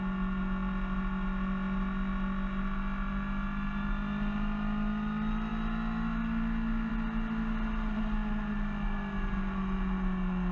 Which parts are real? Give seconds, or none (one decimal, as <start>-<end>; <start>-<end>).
0.0-10.5